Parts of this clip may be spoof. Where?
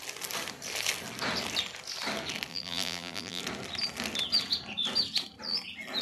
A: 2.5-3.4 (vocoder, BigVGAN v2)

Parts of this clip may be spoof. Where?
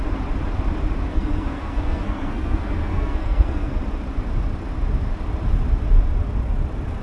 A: 1.1-3.8 (codec, SNAC)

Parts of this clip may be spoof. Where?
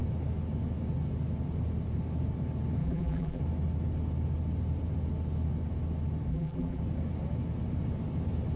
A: 2.8-3.4 (vocoder, BigVGAN v2); 6.3-6.8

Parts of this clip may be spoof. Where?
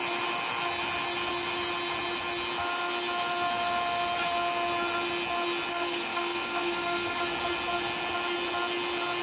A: 5.7-7.2 (codec, SNAC)